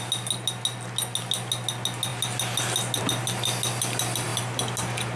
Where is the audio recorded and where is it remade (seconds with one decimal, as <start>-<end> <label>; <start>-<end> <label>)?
0.0-5.2 recorded